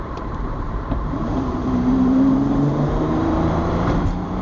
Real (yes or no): no